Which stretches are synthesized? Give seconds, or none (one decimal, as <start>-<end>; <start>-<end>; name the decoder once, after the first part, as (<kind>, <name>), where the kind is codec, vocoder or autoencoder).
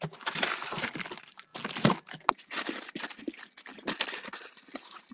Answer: none